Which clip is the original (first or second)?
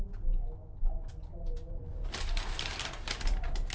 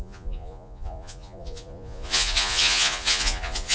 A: first